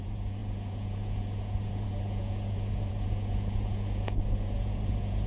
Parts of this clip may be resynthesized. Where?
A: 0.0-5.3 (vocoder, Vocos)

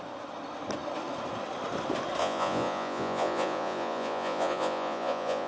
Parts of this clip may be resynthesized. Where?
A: 2.2-5.5 (vocoder, Vocos)

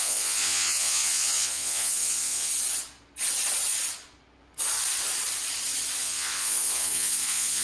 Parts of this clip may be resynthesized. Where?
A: 0.0-2.5 (vocoder, Vocos); 6.0-7.6

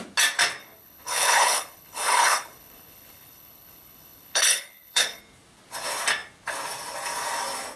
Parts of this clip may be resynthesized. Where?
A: 0.6-5.2 (codec, HILCodec)

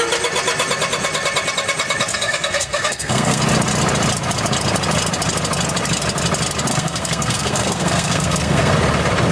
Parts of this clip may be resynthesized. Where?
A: 2.1-3.4 (codec, SNAC); 6.7-8.7

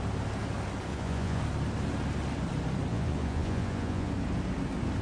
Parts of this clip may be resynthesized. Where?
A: 0.9-1.4 (vocoder, Vocos); 2.9-4.1